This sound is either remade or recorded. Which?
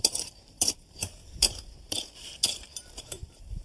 remade